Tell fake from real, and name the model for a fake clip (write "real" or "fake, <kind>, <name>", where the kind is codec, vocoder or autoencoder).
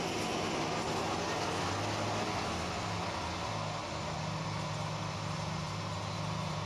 real